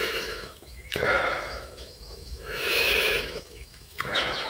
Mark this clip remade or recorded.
remade